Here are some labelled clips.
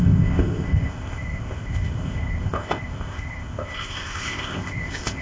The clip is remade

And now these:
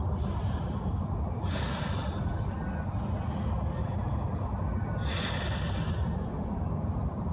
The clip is recorded